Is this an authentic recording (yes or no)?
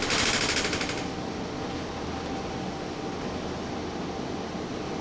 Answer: yes